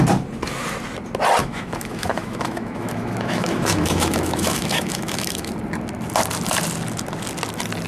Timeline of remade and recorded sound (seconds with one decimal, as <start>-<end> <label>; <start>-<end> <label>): 0.0-1.4 recorded; 1.4-5.5 remade; 5.5-7.9 recorded